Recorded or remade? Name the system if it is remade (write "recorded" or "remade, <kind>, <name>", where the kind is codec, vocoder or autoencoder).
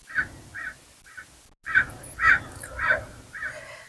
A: recorded